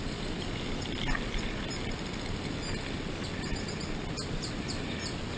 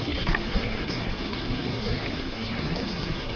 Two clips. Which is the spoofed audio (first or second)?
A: second